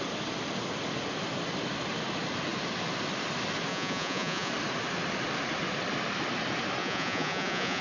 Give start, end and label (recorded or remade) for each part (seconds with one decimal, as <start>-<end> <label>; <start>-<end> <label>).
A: 0.0-3.7 recorded; 3.7-4.5 remade; 4.5-6.8 recorded; 6.8-7.8 remade